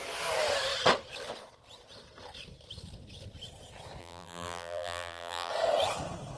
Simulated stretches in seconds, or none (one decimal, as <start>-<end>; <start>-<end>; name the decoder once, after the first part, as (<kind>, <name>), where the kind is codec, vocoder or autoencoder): 4.0-5.5 (vocoder, BigVGAN v2)